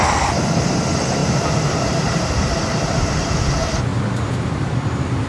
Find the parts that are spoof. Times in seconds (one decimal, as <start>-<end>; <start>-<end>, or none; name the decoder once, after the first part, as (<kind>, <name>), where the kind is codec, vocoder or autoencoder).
1.2-3.4 (vocoder, BigVGAN v2); 3.9-5.3

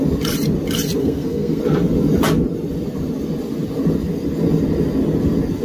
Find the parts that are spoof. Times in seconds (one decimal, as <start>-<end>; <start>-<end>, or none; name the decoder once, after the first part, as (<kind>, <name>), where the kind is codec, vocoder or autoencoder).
1.0-1.6 (codec, SNAC)

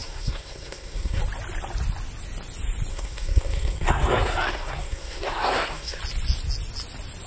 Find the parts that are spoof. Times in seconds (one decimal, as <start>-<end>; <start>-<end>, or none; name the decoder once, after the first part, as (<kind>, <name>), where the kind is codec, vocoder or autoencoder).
0.0-1.2 (codec, SNAC); 2.9-6.0